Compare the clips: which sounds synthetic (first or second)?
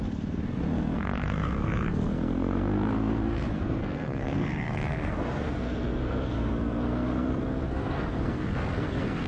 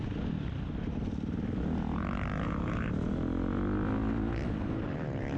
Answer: first